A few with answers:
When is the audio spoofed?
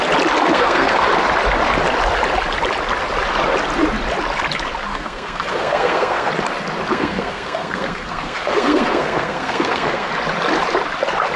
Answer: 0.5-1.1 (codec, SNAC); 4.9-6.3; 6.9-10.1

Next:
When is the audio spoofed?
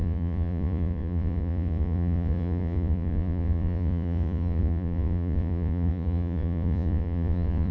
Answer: 0.0-7.7 (vocoder, Vocos)